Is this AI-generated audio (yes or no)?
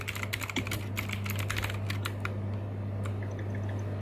no